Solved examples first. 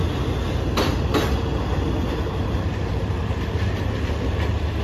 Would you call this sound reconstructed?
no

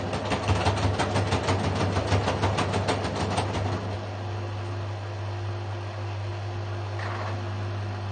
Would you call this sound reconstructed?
no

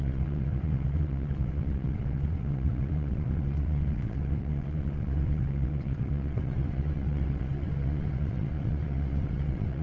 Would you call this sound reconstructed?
yes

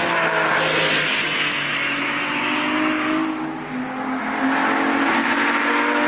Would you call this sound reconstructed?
no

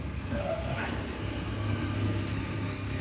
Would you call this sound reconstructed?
yes